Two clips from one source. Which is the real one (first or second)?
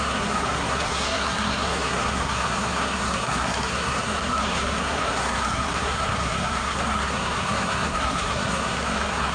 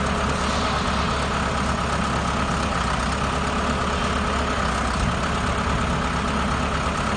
second